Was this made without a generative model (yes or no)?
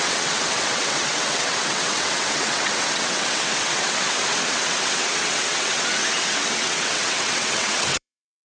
no